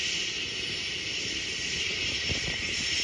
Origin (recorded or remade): recorded